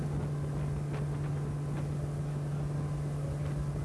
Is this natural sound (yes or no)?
yes